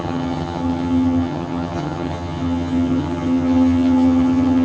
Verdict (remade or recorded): remade